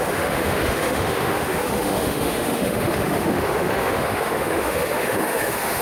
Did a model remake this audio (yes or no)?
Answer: yes